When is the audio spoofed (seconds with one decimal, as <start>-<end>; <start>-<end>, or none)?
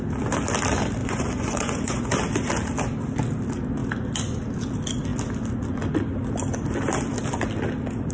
1.0-2.1